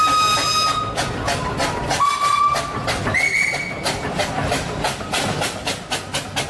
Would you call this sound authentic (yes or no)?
yes